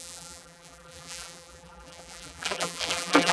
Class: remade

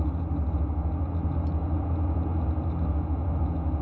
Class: recorded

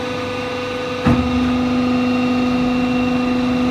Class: recorded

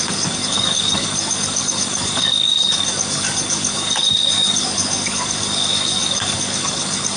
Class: remade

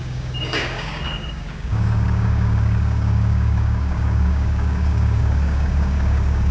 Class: remade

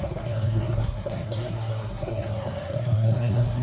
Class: remade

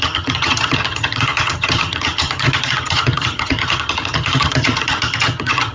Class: remade